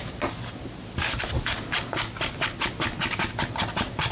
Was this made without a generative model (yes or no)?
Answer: yes